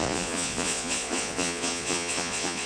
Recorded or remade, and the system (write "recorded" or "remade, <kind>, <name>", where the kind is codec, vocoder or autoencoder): remade, vocoder, Vocos